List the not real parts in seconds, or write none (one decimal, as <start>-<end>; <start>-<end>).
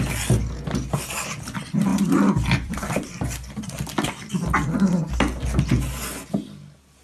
1.9-5.0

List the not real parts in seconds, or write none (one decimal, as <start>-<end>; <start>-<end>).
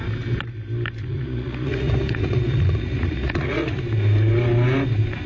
1.0-3.8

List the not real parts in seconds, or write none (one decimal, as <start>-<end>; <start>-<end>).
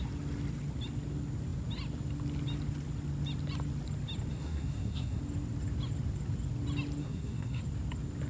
4.3-5.2; 7.0-7.6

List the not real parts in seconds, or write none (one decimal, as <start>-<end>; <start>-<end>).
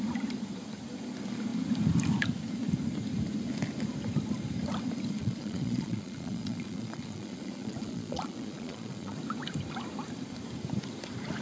5.2-9.2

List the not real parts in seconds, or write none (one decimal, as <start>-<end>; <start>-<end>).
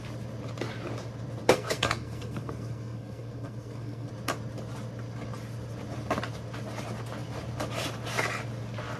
1.4-4.1